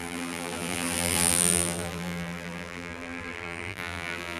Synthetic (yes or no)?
yes